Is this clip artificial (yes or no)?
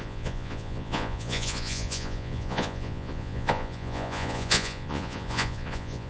yes